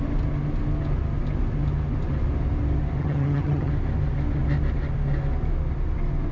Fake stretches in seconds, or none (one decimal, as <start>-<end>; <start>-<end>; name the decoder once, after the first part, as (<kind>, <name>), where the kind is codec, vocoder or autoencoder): 3.0-3.7 (vocoder, HiFi-GAN)